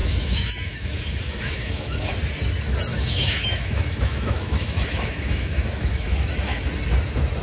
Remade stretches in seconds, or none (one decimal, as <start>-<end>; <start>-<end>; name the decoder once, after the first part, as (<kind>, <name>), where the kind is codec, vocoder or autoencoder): 0.0-2.1 (autoencoder, DAC-VAE); 2.9-6.7